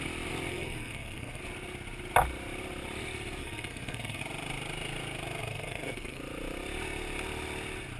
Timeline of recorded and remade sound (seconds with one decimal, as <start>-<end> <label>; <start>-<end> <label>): 0.0-0.5 recorded; 0.5-1.4 remade; 1.4-3.4 recorded; 3.4-4.2 remade; 4.2-5.5 recorded; 5.5-6.2 remade; 6.2-8.0 recorded